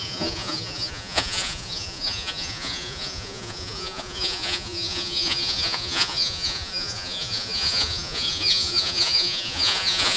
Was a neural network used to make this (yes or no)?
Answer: yes